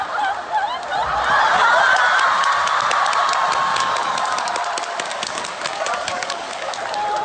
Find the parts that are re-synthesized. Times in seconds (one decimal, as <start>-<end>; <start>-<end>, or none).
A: 3.7-4.5; 5.1-6.8